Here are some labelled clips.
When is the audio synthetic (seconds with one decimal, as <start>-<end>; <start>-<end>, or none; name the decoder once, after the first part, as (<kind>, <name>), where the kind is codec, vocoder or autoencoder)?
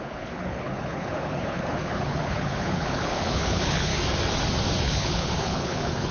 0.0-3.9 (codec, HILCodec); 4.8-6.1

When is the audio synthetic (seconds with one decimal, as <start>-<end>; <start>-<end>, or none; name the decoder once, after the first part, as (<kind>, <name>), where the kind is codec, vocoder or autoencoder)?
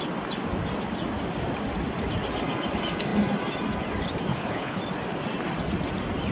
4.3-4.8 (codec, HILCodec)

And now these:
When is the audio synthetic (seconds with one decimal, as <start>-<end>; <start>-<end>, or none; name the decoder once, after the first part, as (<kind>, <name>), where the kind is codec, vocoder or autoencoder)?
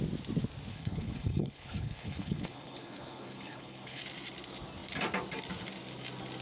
0.7-4.0 (codec, HILCodec)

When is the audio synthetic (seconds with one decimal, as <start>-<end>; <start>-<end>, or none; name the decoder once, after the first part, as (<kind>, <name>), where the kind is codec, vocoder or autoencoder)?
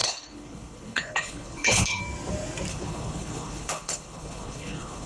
0.0-2.0 (codec, HILCodec); 2.7-5.1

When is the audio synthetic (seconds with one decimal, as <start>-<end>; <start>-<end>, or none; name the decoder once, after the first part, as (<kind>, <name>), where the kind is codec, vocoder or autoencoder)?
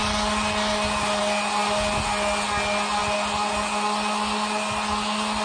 none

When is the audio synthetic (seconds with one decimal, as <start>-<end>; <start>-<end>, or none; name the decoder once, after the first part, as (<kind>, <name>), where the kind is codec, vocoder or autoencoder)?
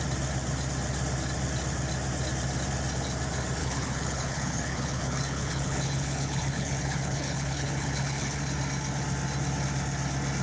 3.6-8.4 (codec, HILCodec)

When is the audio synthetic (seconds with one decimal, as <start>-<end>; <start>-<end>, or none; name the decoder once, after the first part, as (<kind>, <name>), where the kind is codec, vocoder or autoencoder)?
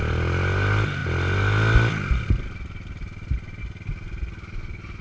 none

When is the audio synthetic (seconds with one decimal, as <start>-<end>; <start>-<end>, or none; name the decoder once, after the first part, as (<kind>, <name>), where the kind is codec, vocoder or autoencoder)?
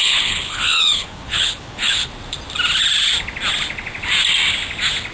0.0-2.1 (codec, HILCodec)